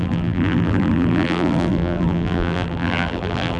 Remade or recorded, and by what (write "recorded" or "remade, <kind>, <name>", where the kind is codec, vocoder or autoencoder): remade, vocoder, BigVGAN v2